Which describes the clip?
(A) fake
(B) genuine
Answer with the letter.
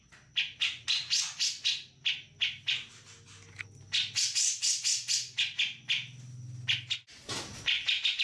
B